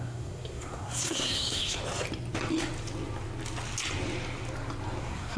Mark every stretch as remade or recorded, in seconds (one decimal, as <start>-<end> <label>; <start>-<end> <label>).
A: 0.0-1.8 remade; 1.8-5.0 recorded; 5.0-5.4 remade